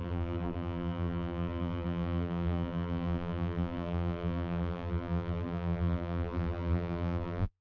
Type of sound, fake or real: fake